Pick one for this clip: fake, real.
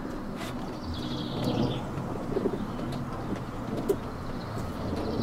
real